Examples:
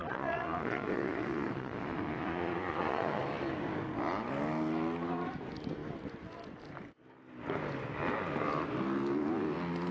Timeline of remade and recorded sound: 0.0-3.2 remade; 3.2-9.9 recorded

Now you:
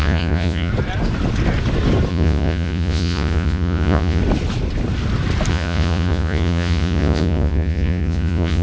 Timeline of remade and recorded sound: 0.0-0.7 remade; 0.7-2.1 recorded; 2.1-4.2 remade; 4.2-5.5 recorded; 5.5-8.6 remade

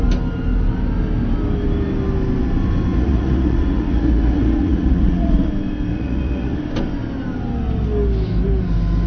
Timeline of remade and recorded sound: 0.0-2.9 recorded; 2.9-5.5 remade; 5.5-5.9 recorded; 5.9-6.6 remade; 6.6-9.1 recorded

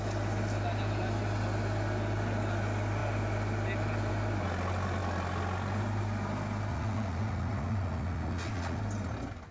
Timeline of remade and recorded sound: 0.0-6.7 recorded; 6.7-8.8 remade; 8.8-9.5 recorded

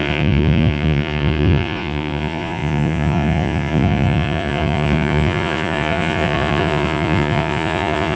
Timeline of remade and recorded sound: 0.0-8.2 remade